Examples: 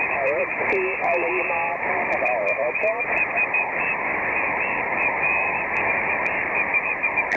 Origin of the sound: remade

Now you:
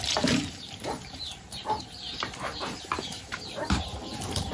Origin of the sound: remade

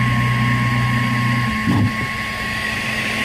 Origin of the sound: recorded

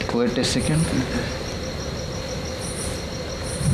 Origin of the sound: recorded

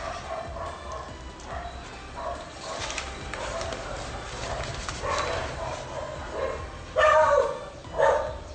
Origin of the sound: recorded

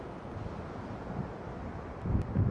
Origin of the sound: recorded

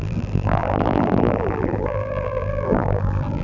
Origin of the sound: remade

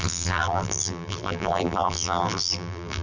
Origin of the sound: remade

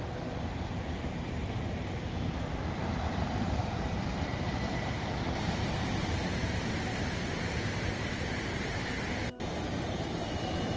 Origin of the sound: remade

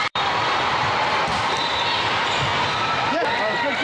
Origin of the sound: remade